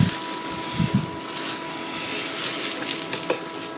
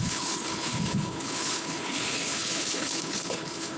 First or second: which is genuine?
first